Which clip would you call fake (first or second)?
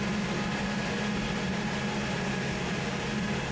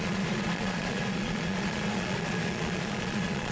second